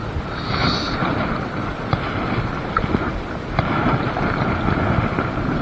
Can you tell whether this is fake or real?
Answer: real